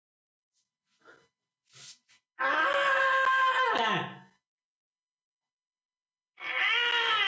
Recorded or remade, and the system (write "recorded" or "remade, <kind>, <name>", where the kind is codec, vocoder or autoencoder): recorded